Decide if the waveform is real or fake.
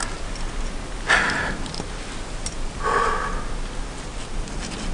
real